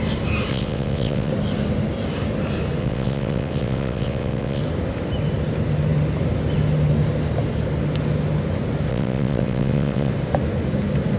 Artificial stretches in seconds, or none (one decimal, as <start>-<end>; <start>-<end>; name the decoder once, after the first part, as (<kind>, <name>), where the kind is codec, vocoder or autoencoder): 0.5-1.3 (vocoder, WaveNeXt); 2.8-4.6; 8.9-10.1

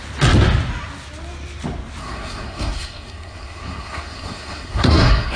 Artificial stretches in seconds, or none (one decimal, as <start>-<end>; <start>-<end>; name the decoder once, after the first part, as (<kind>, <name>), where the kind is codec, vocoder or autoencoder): 2.0-5.4 (codec, SNAC)

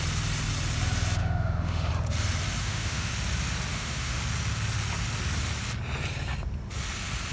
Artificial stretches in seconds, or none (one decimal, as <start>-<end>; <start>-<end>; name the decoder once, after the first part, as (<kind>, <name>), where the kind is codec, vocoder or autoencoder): 1.2-1.9 (autoencoder, DAC-VAE); 2.6-3.1; 3.7-4.2

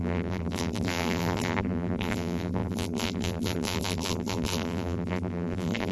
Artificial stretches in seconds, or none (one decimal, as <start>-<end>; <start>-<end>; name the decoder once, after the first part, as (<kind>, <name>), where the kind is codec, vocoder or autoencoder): 0.0-5.9 (vocoder, BigVGAN v2)

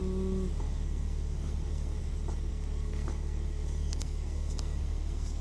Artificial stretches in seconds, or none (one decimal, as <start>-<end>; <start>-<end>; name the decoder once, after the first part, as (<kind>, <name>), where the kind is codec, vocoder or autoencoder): 0.6-2.0 (codec, SNAC); 2.5-5.4

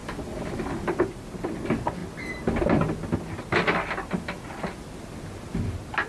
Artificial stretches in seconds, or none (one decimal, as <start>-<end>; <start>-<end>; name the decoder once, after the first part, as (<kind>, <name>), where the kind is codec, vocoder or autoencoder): none

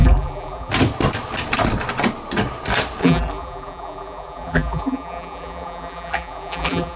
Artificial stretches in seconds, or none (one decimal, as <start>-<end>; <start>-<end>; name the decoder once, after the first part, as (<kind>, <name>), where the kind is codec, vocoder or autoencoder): 0.0-0.7 (vocoder, BigVGAN v2); 3.0-7.0